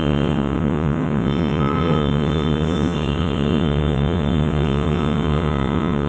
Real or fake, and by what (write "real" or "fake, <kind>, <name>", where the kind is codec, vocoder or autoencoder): fake, vocoder, WaveNeXt